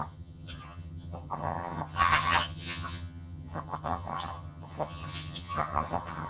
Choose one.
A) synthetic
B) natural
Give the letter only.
A